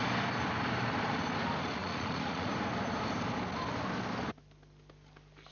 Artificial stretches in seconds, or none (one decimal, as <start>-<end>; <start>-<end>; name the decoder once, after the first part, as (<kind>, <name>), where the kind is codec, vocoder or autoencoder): 1.8-2.5 (vocoder, Vocos)